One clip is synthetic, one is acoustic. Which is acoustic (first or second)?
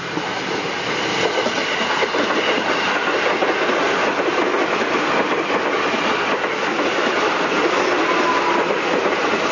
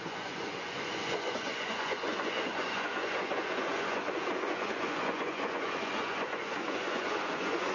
first